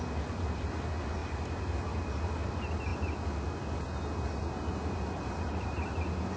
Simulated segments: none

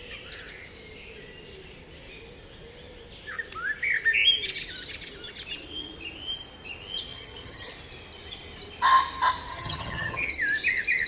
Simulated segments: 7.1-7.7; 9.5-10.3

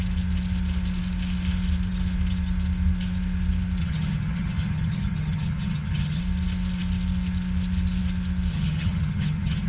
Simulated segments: 3.8-6.2; 8.5-9.7